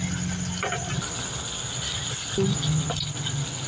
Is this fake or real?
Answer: real